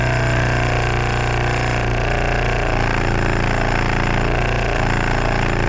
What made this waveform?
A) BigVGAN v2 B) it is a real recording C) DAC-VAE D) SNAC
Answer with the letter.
B